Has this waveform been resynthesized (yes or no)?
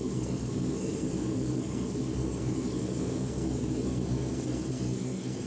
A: yes